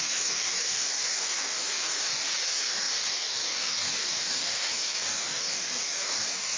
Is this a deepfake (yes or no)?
yes